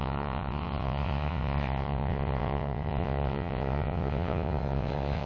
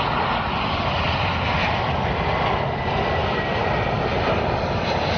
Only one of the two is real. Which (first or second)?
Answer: second